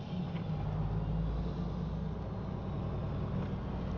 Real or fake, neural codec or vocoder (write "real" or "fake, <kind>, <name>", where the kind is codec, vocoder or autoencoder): real